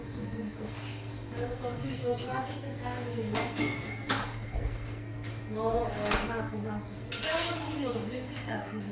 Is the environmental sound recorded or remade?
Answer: remade